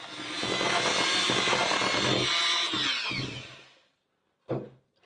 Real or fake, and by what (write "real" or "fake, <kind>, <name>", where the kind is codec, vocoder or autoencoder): real